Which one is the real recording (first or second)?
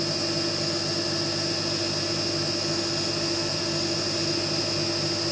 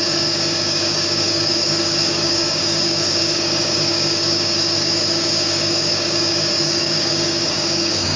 first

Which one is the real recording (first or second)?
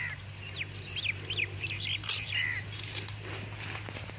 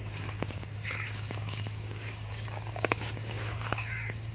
first